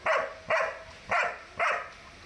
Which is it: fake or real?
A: real